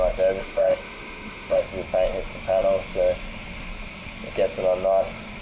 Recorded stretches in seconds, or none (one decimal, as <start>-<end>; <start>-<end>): 0.0-0.4; 1.6-5.4